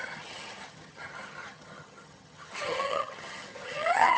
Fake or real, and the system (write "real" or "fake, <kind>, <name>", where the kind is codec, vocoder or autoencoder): fake, vocoder, HiFi-GAN